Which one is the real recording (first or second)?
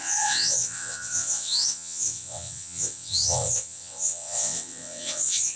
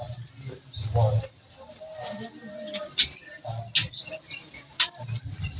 second